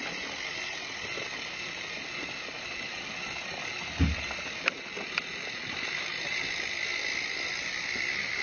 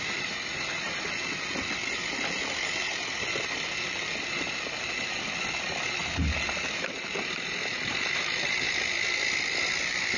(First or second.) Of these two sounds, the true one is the first